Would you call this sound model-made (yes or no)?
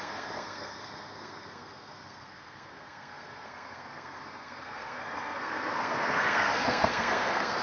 yes